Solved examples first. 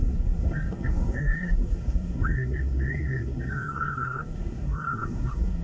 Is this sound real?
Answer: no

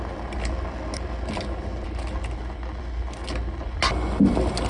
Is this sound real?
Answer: yes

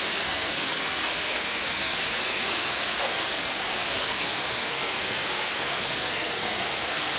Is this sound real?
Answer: no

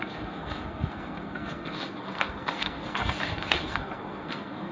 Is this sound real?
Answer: no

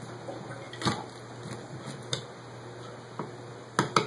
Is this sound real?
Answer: yes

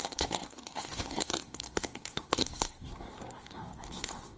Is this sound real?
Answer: no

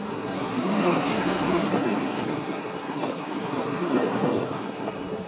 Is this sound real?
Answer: no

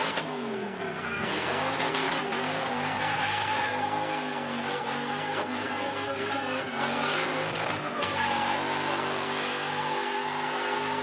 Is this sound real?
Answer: no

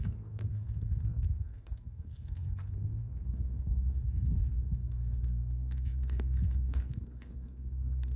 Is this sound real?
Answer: no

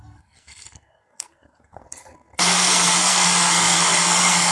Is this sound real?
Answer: no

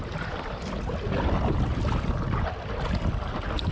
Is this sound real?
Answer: yes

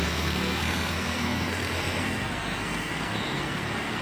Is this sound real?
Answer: no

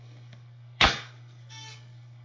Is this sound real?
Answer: no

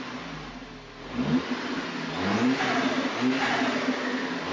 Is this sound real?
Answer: yes